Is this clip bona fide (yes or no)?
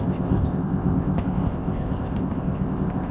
no